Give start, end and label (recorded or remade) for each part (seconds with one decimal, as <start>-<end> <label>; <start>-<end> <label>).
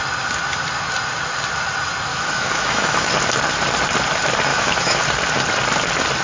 0.0-2.1 recorded; 2.1-3.1 remade; 3.1-4.5 recorded; 4.5-5.0 remade; 5.0-6.2 recorded